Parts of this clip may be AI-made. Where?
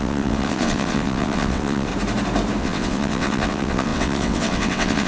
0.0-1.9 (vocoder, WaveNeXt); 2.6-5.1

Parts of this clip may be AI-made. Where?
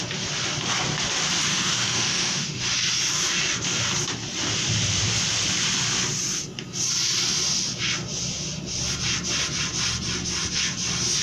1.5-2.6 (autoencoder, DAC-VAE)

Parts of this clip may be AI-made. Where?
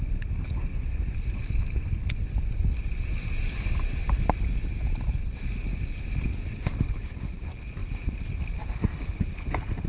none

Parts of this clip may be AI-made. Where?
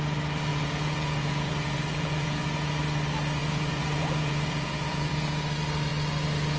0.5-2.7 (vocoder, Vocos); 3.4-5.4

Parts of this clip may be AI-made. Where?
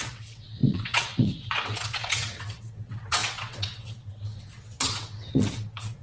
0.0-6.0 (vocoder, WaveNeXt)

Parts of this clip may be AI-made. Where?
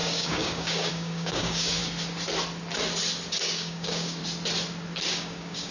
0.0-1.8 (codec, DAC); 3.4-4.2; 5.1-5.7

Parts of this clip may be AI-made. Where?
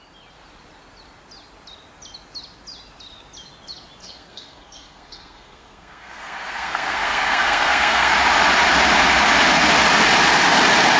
4.0-8.1 (codec, SNAC)